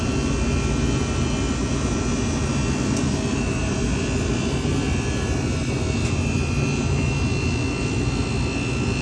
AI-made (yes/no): no